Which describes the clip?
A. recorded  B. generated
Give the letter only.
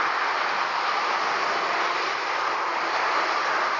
A